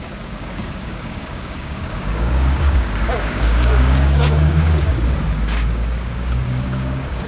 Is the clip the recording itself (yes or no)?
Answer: no